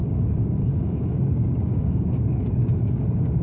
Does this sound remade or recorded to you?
remade